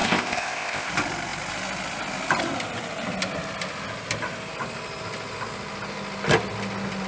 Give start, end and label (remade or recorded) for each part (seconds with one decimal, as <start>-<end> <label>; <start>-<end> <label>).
0.0-0.9 remade; 0.9-7.1 recorded